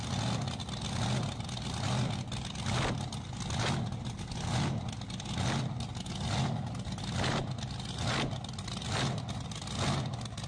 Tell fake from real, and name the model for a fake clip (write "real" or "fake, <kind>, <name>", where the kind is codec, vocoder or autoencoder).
real